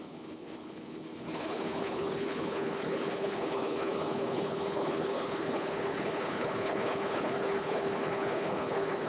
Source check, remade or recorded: remade